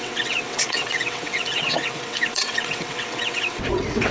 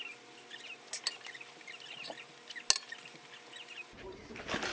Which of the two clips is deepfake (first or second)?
first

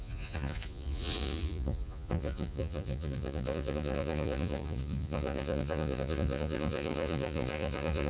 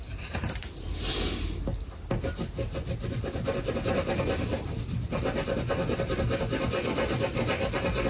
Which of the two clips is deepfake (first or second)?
first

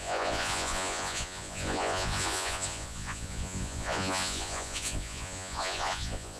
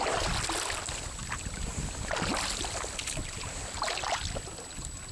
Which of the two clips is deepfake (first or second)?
first